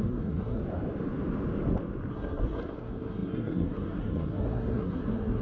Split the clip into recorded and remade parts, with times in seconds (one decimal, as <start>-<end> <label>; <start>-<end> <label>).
0.0-0.6 remade; 0.6-2.1 recorded; 2.1-5.4 remade